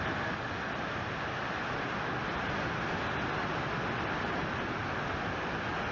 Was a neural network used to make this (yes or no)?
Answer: no